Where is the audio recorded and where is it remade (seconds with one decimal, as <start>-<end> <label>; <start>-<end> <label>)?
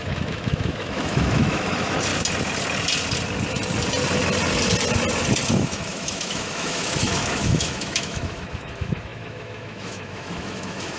0.0-2.1 remade; 2.1-5.5 recorded; 5.5-11.0 remade